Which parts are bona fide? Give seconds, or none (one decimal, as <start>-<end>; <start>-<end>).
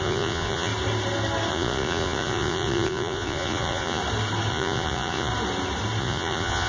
0.7-1.5; 4.0-4.5; 5.3-6.0